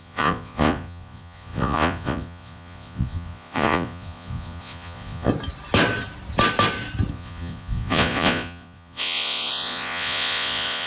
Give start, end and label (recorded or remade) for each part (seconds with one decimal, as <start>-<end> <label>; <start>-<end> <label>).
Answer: 0.0-5.3 remade; 5.3-7.1 recorded; 7.1-10.9 remade